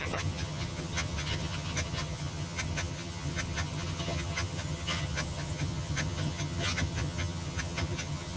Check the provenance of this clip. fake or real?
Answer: fake